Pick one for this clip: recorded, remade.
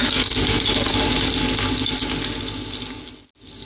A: recorded